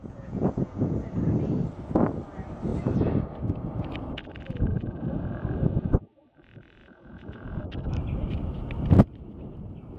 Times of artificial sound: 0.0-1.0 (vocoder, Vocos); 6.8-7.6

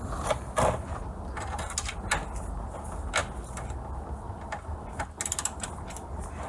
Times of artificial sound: none

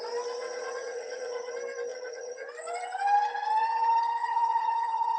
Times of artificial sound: 0.4-1.5 (vocoder, Vocos); 1.9-2.5; 4.2-5.2

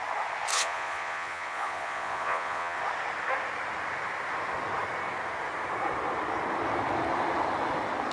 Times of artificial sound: 0.5-2.8 (vocoder, Vocos)

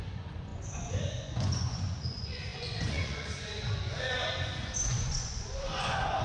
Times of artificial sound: 0.0-6.2 (vocoder, Vocos)

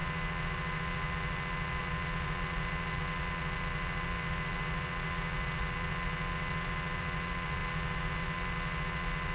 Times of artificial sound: 0.0-9.3 (vocoder, Vocos)

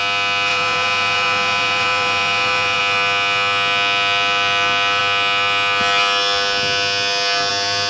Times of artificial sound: 0.5-2.8 (vocoder, Vocos)